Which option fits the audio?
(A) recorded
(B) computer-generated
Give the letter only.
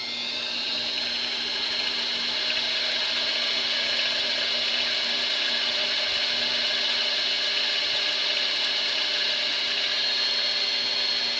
A